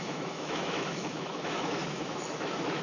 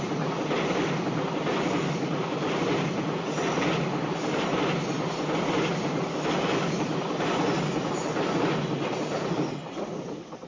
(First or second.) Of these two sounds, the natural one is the second